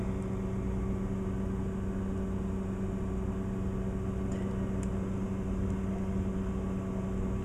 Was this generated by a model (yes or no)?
no